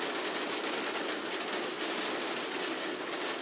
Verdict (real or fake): real